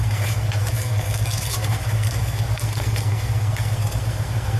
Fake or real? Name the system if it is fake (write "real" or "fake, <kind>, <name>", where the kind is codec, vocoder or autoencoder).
fake, codec, SNAC